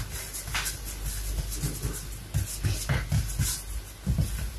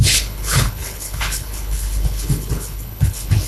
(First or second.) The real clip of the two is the first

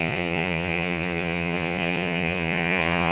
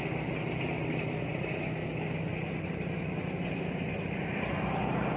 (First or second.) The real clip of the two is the second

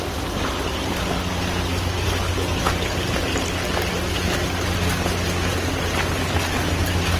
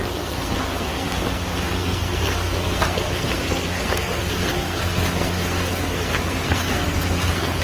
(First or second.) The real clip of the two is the first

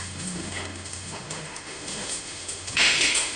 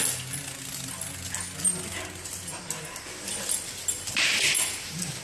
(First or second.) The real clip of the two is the second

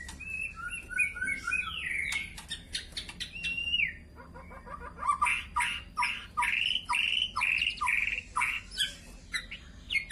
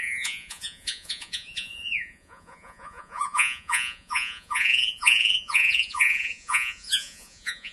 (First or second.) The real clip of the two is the first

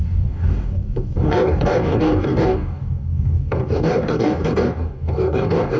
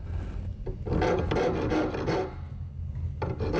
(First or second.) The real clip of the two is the second